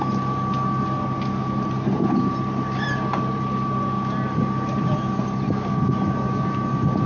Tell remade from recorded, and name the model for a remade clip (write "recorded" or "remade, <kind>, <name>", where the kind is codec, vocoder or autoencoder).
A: recorded